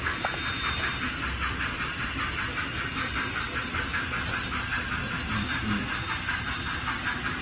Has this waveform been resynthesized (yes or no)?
no